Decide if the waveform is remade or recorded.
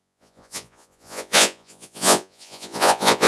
remade